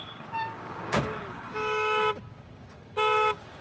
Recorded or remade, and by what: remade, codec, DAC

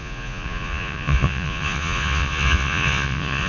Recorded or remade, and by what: remade, vocoder, Vocos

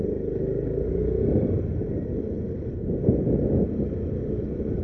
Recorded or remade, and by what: recorded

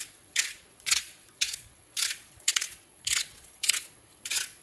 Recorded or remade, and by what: remade, vocoder, Vocos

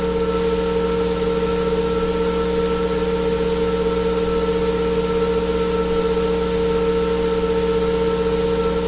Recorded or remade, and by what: recorded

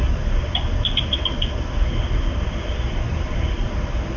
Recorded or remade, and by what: remade, vocoder, BigVGAN v2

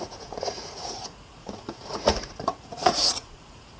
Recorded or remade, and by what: remade, vocoder, Vocos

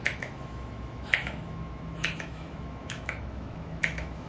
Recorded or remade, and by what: remade, autoencoder, DAC-VAE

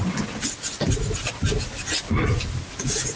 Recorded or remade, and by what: recorded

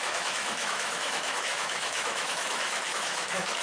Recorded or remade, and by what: remade, autoencoder, DAC-VAE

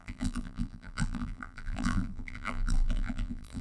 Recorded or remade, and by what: remade, vocoder, BigVGAN v2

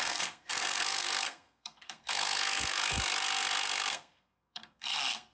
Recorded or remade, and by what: remade, codec, SNAC